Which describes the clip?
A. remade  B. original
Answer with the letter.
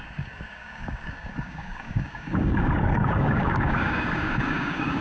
A